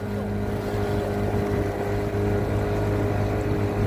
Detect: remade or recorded recorded